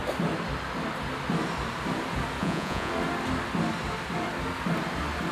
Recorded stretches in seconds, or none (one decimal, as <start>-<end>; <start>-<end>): 0.0-2.4; 2.9-5.3